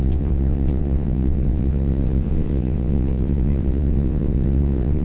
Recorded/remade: remade